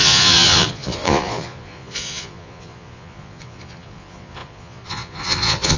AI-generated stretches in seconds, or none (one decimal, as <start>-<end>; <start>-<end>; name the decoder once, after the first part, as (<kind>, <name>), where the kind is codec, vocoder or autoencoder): 0.0-5.8 (vocoder, Vocos)